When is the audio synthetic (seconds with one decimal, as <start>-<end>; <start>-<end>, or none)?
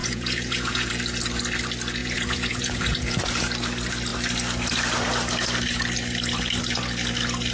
0.0-0.9; 2.0-3.2